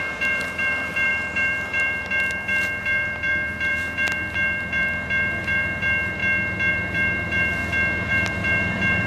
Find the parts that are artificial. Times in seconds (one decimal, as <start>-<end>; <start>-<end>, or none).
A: 0.0-6.2; 6.7-7.6; 8.1-9.1